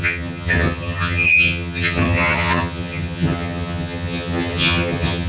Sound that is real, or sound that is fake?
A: fake